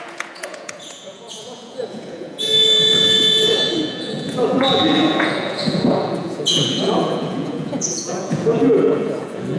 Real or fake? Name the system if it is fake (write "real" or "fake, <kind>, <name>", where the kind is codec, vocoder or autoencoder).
fake, vocoder, Vocos